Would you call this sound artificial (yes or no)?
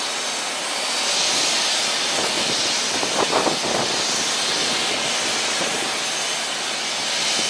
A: no